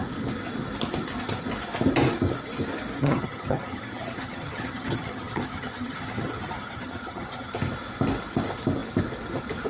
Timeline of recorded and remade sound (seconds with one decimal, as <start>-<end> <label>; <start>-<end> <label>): 0.0-3.0 recorded; 3.0-7.5 remade; 7.5-9.7 recorded